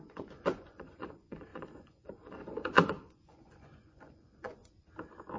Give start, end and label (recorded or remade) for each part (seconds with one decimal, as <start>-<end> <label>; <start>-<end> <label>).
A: 0.0-4.6 remade; 4.6-5.4 recorded